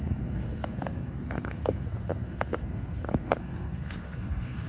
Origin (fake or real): fake